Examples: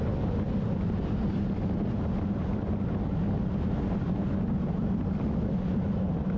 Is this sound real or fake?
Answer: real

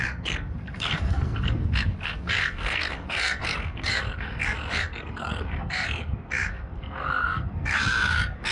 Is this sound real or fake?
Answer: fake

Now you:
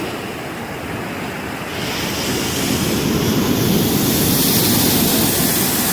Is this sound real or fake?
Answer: real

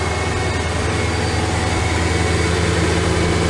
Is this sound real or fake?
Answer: real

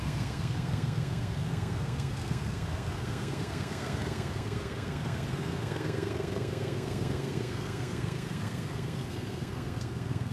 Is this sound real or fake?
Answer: fake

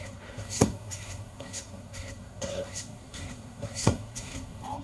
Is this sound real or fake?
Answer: fake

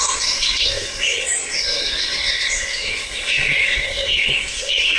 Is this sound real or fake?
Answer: fake